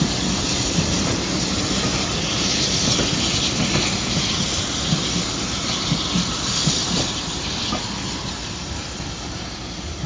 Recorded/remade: recorded